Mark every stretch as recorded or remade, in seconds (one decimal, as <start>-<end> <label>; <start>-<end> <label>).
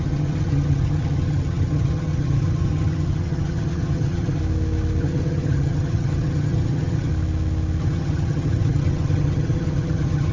0.0-4.4 remade; 4.4-5.0 recorded; 5.0-7.1 remade; 7.1-7.8 recorded; 7.8-10.3 remade